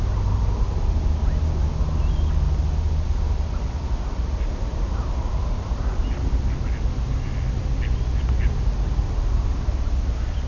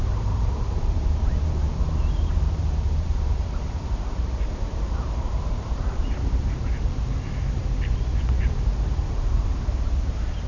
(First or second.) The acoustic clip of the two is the first